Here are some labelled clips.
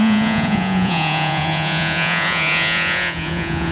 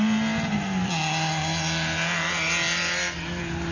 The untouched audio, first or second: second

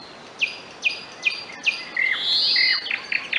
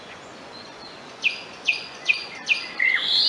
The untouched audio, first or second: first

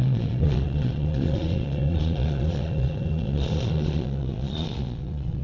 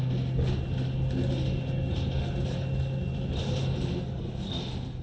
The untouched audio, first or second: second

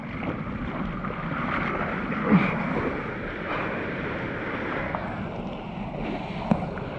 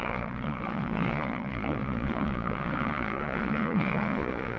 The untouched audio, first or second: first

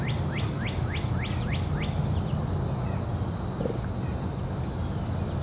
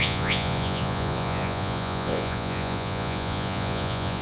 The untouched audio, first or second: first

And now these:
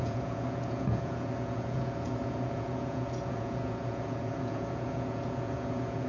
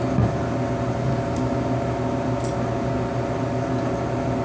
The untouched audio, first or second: second